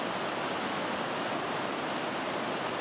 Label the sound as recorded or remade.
recorded